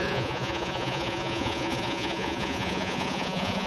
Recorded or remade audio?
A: remade